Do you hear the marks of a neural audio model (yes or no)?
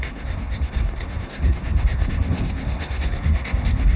yes